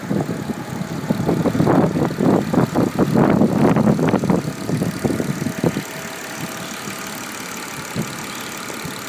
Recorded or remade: recorded